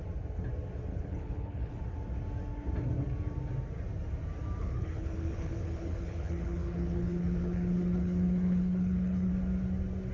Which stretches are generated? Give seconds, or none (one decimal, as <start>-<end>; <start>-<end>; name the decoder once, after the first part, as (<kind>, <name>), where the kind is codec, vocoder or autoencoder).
0.9-1.8 (codec, HILCodec); 4.6-9.3